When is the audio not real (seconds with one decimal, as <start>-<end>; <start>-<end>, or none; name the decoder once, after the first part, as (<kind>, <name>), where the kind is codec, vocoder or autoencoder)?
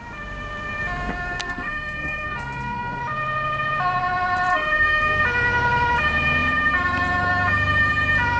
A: 1.4-3.0 (codec, SNAC); 4.5-5.2